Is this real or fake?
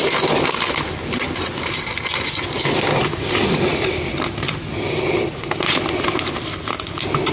real